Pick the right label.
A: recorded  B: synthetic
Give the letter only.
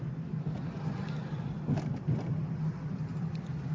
A